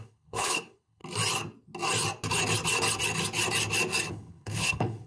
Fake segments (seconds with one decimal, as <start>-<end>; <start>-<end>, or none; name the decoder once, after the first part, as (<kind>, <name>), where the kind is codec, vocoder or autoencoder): 0.0-1.0 (codec, HILCodec); 4.1-5.1